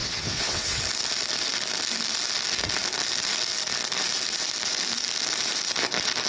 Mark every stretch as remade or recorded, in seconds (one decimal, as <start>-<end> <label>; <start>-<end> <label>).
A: 0.0-0.8 remade; 0.8-6.3 recorded